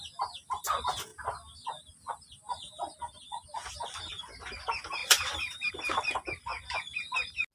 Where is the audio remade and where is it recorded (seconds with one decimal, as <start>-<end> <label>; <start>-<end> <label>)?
0.0-5.0 recorded; 5.0-5.7 remade; 5.7-7.5 recorded